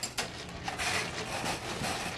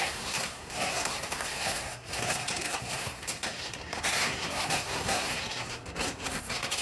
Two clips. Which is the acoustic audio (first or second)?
first